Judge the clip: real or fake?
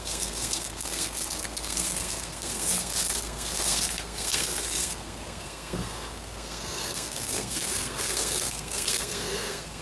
fake